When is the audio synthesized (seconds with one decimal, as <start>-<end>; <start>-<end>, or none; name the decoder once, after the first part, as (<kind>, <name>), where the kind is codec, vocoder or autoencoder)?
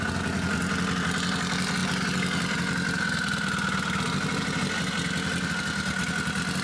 none